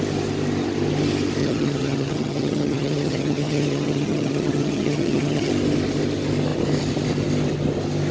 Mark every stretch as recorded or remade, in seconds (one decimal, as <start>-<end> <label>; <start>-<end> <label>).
0.0-1.4 recorded; 1.4-5.5 remade; 5.5-8.1 recorded